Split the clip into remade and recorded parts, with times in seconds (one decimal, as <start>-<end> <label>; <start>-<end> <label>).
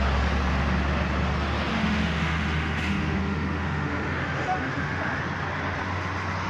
0.0-1.7 recorded; 1.7-5.2 remade; 5.2-6.5 recorded